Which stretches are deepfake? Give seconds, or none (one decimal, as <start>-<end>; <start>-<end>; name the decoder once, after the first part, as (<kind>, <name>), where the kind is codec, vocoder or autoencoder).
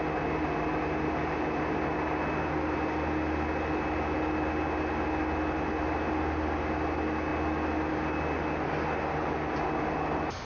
none